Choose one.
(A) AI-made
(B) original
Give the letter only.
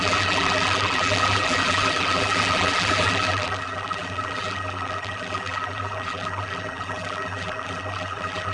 A